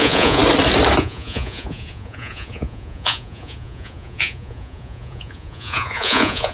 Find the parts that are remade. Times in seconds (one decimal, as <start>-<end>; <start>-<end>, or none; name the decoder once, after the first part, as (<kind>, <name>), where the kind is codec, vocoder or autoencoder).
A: 0.0-0.4 (vocoder, Vocos); 1.0-6.5